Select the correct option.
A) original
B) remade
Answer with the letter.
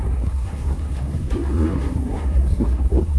B